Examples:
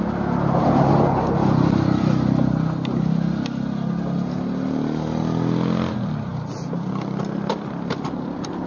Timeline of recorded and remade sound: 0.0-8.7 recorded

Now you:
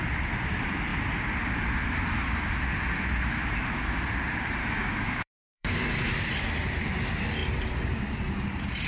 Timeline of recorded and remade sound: 0.0-4.6 recorded; 4.6-6.1 remade; 6.1-8.9 recorded

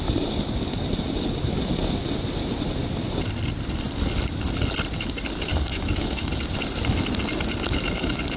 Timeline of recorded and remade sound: 0.0-5.5 recorded; 5.5-6.3 remade; 6.3-8.4 recorded

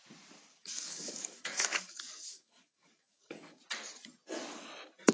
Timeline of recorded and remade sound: 0.0-0.5 recorded; 0.5-3.6 remade; 3.6-5.1 recorded